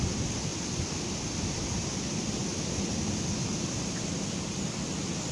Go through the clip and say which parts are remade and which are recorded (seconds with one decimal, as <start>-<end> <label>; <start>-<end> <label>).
0.0-5.3 recorded